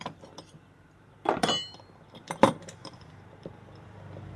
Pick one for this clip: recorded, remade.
remade